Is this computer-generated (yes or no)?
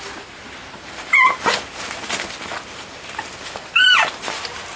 no